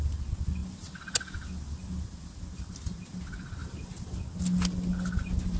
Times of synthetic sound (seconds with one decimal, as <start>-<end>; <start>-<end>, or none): none